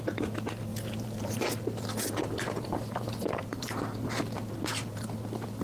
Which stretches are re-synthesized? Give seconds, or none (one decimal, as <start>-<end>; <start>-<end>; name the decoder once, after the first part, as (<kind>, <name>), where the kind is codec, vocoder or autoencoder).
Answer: 0.7-1.4 (vocoder, BigVGAN v2); 2.2-3.8